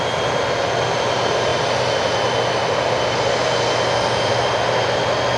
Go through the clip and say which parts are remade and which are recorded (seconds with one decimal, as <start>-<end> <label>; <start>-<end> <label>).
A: 0.0-5.4 recorded